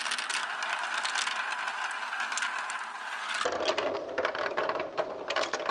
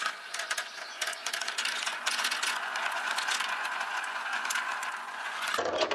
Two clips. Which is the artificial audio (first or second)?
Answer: second